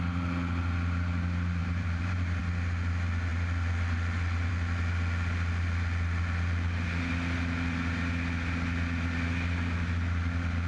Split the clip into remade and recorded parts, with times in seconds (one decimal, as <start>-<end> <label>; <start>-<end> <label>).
0.0-1.6 recorded; 1.6-2.4 remade; 2.4-10.7 recorded